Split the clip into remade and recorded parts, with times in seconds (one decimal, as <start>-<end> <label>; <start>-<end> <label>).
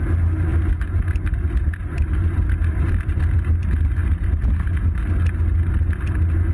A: 0.0-1.8 recorded; 1.8-2.9 remade; 2.9-4.0 recorded; 4.0-4.7 remade; 4.7-6.5 recorded